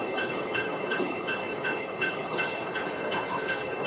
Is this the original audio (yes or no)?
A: no